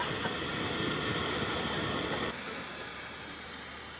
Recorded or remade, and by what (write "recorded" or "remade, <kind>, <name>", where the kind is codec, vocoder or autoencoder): recorded